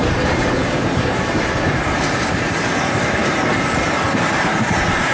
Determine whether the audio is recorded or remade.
remade